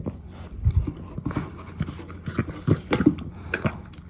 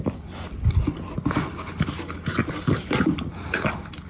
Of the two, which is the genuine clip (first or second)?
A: first